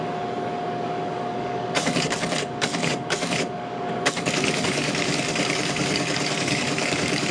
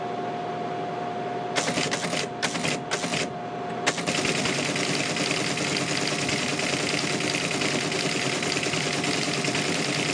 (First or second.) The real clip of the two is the second